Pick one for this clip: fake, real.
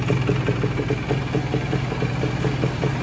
real